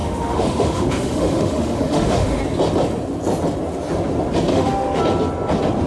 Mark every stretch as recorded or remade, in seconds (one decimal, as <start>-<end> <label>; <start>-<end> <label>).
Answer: 0.0-2.4 remade; 2.4-4.5 recorded; 4.5-5.0 remade; 5.0-5.9 recorded